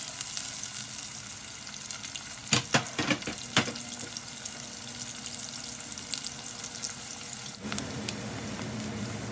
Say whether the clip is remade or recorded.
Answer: recorded